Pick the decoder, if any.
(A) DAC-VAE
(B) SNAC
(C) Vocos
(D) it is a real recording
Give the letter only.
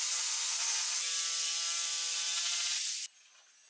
D